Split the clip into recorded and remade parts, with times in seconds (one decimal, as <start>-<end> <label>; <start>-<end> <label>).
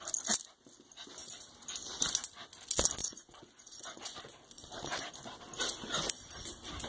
0.0-3.0 recorded; 3.0-4.2 remade; 4.2-6.9 recorded